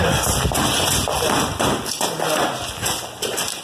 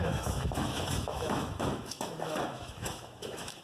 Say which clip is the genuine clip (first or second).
first